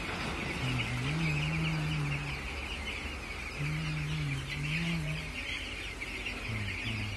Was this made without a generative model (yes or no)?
yes